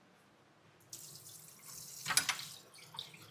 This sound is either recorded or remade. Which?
recorded